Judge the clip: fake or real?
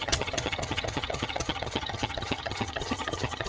fake